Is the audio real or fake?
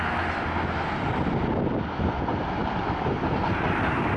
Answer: real